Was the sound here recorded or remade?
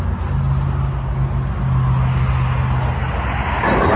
recorded